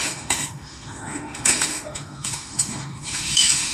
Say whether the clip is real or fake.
fake